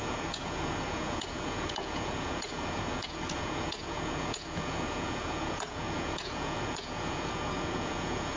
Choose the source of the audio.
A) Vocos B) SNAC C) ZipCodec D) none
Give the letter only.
A